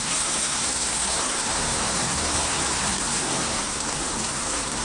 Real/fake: fake